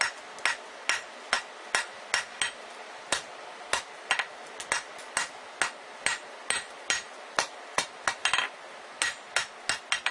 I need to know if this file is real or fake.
real